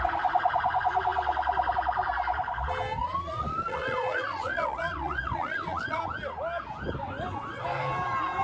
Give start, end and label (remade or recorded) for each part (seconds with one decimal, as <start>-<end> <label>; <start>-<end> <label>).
0.0-3.0 recorded; 3.0-6.0 remade; 6.0-8.4 recorded